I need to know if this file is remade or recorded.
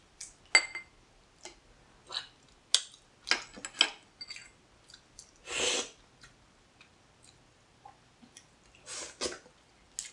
recorded